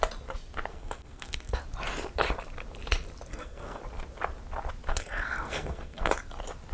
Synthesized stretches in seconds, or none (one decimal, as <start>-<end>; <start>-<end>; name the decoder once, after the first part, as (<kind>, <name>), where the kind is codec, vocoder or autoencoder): 0.7-1.6 (codec, SNAC); 3.3-3.8; 4.9-6.1